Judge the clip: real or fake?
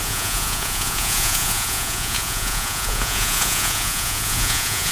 fake